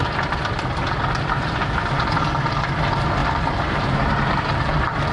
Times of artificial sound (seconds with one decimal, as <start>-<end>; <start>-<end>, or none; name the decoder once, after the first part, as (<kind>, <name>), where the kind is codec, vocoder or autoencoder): 3.2-4.3 (vocoder, BigVGAN v2)